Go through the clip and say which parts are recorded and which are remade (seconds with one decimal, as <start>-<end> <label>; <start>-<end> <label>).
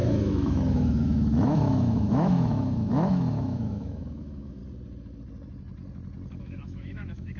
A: 0.0-4.6 remade; 4.6-6.4 recorded; 6.4-7.4 remade